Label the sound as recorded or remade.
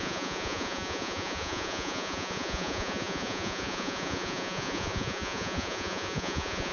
remade